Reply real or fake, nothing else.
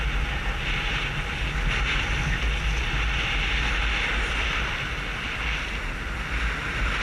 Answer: real